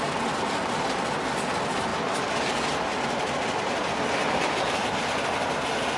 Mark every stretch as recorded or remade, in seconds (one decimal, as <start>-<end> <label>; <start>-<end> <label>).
0.0-6.0 recorded